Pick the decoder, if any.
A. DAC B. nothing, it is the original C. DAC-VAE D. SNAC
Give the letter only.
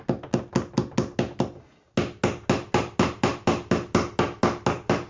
B